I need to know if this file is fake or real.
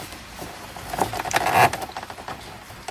fake